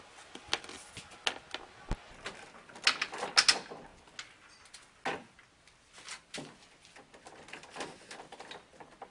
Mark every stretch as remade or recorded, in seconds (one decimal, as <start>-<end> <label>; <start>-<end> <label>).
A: 0.0-9.1 recorded